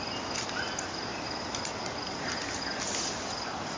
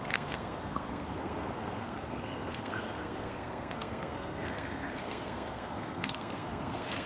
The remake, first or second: second